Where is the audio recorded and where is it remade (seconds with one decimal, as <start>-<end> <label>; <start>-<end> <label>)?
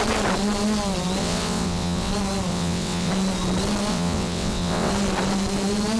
0.0-1.2 recorded; 1.2-2.1 remade; 2.1-2.5 recorded; 2.5-3.1 remade; 3.1-3.9 recorded; 3.9-4.9 remade; 4.9-6.0 recorded